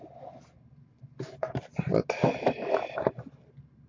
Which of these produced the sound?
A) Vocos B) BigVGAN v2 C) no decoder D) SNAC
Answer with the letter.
C